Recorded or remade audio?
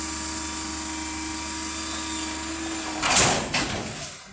recorded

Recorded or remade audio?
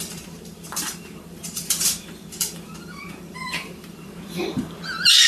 remade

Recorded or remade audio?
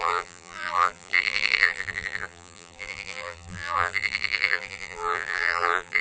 remade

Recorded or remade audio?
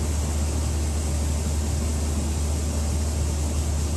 recorded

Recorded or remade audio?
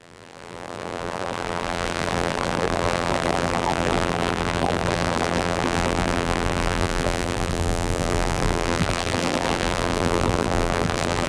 remade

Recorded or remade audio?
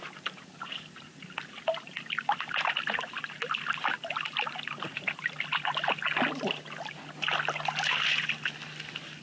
recorded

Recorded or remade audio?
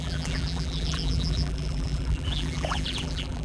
remade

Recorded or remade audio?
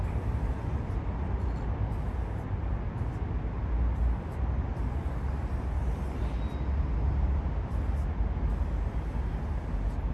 recorded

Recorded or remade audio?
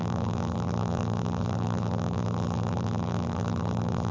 remade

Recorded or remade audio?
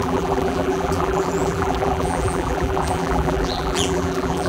remade